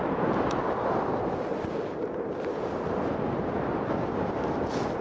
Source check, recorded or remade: recorded